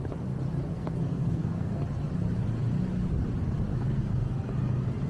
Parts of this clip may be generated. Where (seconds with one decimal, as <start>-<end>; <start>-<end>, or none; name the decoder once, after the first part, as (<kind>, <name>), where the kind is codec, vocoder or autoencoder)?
0.7-1.8 (codec, SNAC); 3.7-4.3